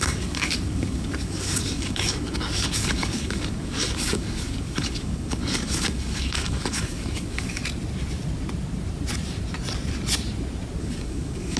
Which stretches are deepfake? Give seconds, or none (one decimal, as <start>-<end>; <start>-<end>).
0.0-7.6; 10.8-11.6